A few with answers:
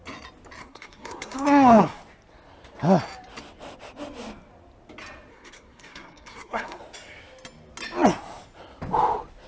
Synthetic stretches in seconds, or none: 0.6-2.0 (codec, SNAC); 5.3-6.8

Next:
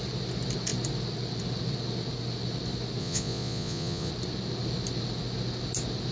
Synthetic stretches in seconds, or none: 3.0-4.1 (vocoder, Vocos)